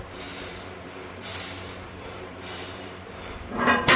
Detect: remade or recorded remade